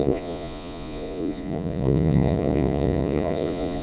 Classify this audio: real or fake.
fake